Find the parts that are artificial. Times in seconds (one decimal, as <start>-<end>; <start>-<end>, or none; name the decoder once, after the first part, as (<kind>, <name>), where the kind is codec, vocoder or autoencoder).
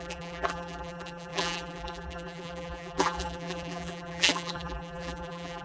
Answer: 0.0-5.6 (vocoder, BigVGAN v2)